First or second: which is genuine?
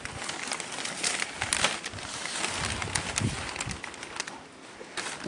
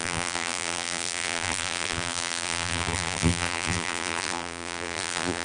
first